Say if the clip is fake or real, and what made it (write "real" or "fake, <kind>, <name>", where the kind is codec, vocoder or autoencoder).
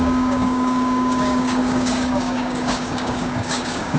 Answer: fake, codec, DAC